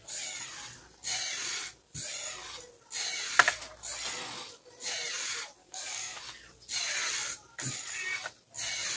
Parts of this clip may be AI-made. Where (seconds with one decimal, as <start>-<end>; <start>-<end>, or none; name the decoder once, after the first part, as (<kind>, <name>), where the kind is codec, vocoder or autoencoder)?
5.6-6.2 (codec, DAC)